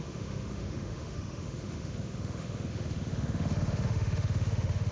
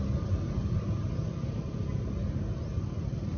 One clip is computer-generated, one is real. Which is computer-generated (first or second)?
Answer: first